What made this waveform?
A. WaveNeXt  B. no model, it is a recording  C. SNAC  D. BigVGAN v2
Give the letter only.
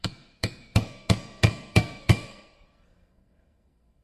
C